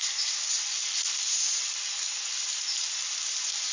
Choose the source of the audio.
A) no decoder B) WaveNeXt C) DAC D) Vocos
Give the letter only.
A